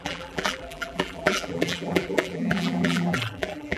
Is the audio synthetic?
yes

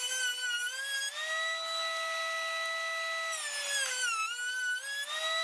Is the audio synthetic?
no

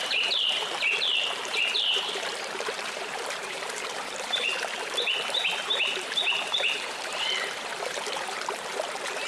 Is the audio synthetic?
yes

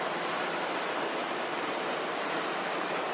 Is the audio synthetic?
yes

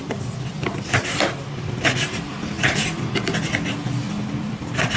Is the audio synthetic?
yes